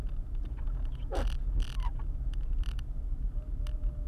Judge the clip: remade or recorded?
recorded